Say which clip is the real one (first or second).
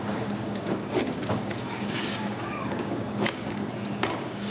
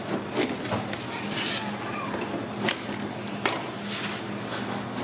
second